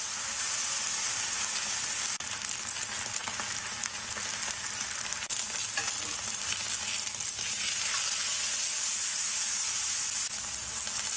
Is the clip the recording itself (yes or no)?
yes